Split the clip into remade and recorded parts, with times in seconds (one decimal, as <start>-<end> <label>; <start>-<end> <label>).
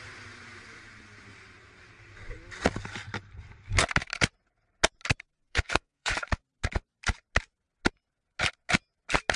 0.0-5.5 recorded; 5.5-6.1 remade; 6.1-9.4 recorded